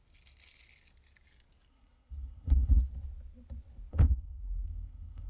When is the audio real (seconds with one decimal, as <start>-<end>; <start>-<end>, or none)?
0.0-1.7; 2.8-3.9